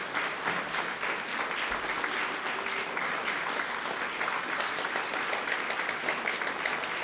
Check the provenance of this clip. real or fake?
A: real